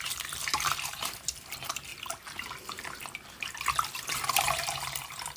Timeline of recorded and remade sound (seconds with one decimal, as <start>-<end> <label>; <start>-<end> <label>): 0.0-1.9 remade; 1.9-4.1 recorded; 4.1-5.4 remade